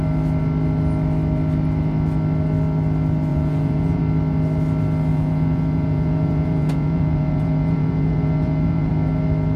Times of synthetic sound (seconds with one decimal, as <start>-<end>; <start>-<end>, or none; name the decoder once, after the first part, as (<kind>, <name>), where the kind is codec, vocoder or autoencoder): 3.3-4.0 (vocoder, Vocos); 5.1-8.9